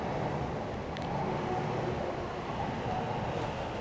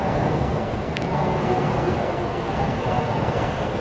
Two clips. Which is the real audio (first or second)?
first